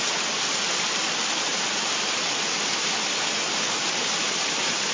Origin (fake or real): real